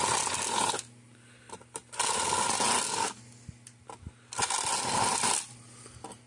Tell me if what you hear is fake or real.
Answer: real